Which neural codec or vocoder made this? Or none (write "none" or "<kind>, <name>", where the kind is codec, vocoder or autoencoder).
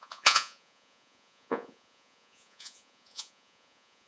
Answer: vocoder, Vocos